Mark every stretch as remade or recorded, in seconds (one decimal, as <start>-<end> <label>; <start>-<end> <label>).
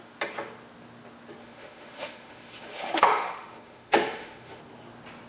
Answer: 0.0-1.4 recorded; 1.4-4.6 remade; 4.6-5.3 recorded